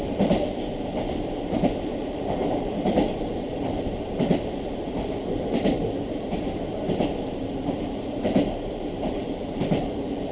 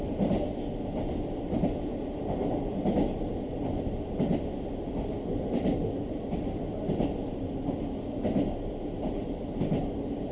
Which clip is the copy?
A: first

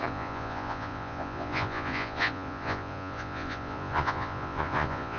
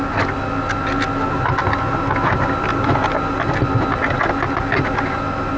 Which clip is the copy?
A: first